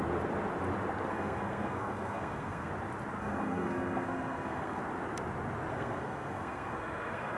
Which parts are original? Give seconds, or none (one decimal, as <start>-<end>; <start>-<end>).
0.0-1.1; 2.7-3.2; 4.8-5.7